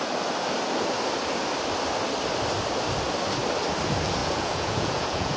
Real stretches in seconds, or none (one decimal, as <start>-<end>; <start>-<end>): 0.0-4.2

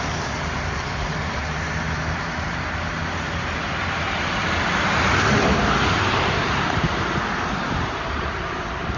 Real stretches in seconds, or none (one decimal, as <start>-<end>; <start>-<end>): none

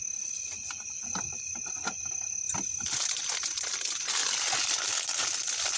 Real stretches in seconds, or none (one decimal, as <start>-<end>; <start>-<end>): 0.0-5.8

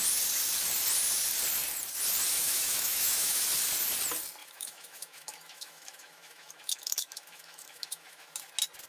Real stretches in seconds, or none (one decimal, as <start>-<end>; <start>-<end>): 0.0-2.4; 3.4-4.4; 8.5-8.9

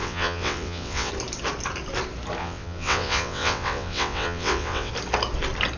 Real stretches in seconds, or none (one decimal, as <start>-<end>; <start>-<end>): 1.1-2.4; 4.9-5.8

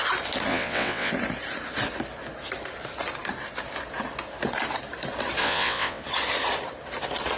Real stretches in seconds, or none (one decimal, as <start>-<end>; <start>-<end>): 0.0-0.5; 1.1-5.4; 6.0-7.4

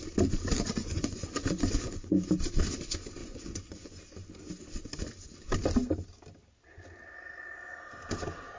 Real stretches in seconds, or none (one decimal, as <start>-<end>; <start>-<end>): 0.0-0.8; 2.3-3.2; 4.0-8.6